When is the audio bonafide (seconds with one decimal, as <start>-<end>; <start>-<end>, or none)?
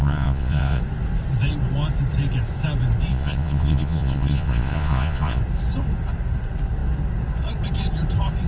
0.8-3.1; 5.4-8.5